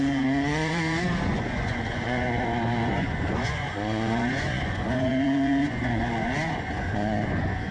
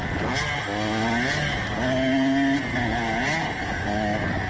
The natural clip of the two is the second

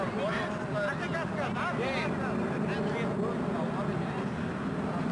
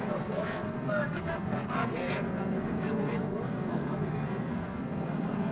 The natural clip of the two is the first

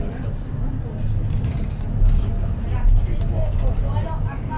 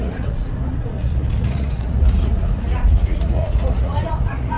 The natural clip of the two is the first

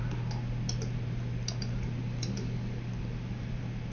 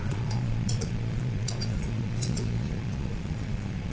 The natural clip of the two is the first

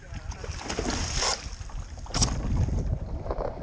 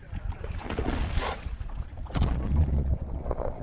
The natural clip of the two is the first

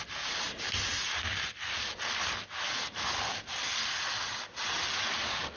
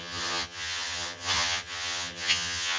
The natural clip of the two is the first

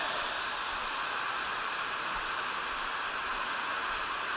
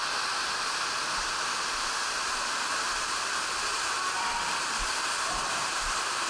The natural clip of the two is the second